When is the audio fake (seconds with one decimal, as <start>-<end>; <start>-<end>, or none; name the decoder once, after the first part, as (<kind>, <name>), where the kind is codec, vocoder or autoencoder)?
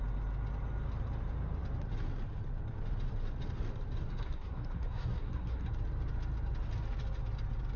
4.1-5.7 (codec, SNAC)